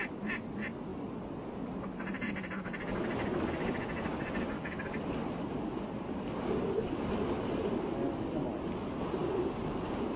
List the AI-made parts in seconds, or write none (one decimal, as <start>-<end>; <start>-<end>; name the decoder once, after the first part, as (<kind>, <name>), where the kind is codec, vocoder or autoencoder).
none